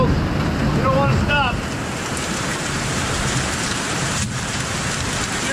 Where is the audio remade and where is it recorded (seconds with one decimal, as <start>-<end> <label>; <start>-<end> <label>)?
0.0-2.5 recorded; 2.5-4.6 remade; 4.6-5.5 recorded